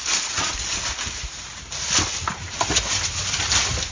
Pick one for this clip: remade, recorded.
recorded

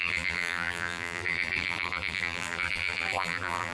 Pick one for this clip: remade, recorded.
remade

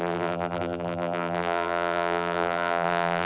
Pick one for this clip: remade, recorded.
remade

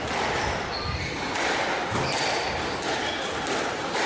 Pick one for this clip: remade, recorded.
recorded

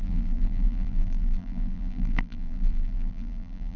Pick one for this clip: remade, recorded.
remade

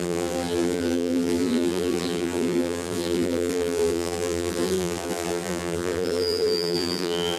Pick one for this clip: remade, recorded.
remade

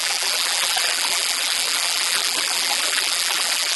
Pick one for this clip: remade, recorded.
remade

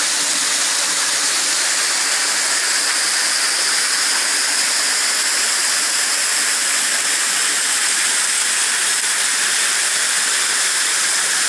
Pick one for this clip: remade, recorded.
recorded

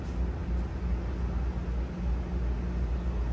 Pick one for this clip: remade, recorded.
recorded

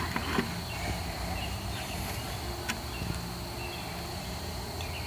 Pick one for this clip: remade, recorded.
recorded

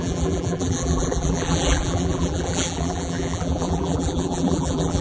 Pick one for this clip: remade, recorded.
remade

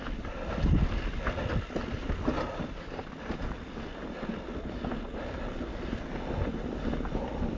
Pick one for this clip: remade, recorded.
recorded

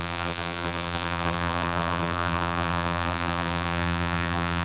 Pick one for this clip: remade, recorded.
remade